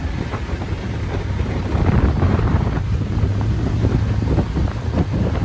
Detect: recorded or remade remade